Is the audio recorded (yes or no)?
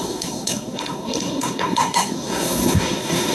no